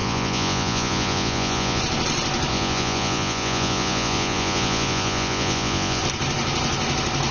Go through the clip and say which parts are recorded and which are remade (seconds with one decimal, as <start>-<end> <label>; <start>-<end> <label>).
0.0-1.8 remade; 1.8-2.5 recorded; 2.5-6.0 remade; 6.0-7.3 recorded